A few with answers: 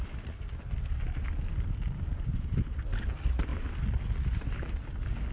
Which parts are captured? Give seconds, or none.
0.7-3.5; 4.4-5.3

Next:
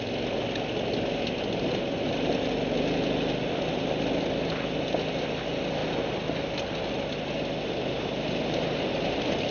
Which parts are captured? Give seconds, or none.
0.0-9.5

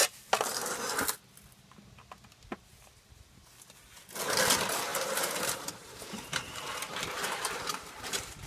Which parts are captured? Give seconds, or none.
0.0-4.9

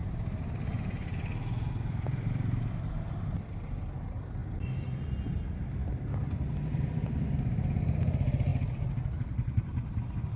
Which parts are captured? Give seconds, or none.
0.0-1.7; 8.5-9.2

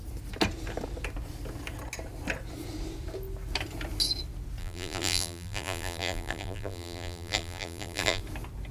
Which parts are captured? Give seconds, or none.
0.0-4.6; 8.2-8.7